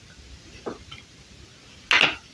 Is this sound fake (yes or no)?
no